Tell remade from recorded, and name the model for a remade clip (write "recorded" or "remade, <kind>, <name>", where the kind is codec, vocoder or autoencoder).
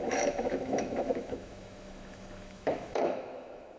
remade, autoencoder, DAC-VAE